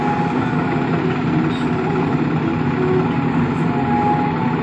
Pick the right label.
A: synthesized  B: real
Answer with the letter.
B